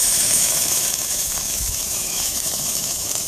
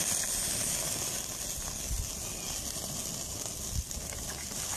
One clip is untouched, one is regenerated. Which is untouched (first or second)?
second